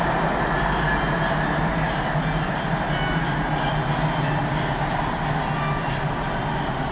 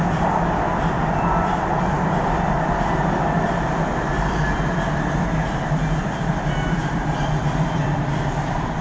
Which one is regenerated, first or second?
second